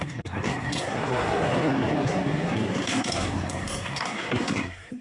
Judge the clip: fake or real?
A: fake